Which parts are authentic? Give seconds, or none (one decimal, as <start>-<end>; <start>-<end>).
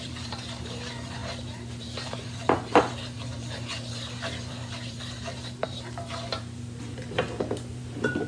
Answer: none